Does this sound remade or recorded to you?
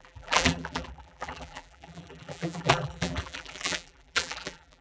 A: remade